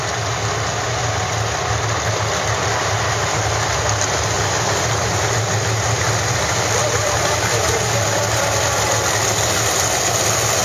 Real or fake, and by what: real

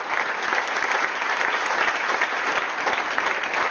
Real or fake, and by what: real